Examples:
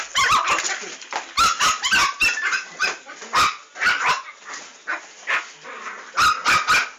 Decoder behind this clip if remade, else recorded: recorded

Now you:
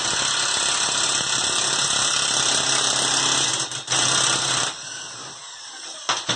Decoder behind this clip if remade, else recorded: recorded